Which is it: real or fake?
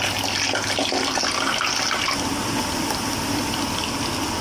real